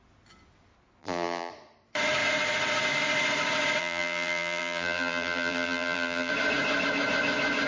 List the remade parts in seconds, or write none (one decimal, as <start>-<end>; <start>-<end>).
1.0-1.5; 3.8-6.3